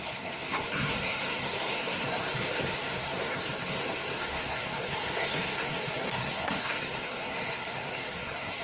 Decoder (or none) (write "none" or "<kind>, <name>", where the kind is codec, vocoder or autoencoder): codec, SNAC